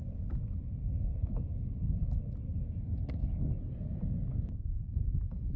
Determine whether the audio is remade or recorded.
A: recorded